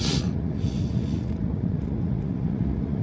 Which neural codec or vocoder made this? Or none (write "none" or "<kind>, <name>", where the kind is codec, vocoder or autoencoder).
vocoder, Vocos